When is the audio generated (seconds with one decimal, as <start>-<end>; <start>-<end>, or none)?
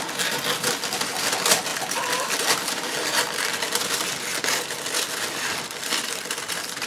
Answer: 1.7-3.8; 4.3-6.4